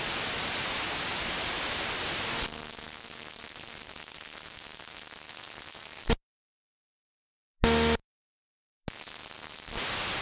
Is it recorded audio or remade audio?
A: recorded